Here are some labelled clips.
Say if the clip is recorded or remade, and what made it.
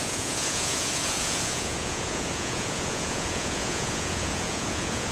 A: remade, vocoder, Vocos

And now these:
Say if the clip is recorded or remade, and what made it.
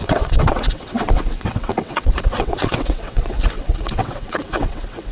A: remade, vocoder, WaveNeXt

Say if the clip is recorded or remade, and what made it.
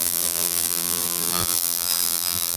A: remade, vocoder, BigVGAN v2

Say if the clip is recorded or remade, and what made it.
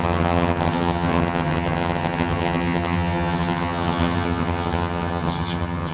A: remade, vocoder, HiFi-GAN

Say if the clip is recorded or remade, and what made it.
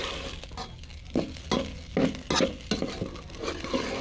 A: recorded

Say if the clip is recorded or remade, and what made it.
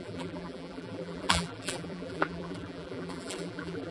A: remade, vocoder, BigVGAN v2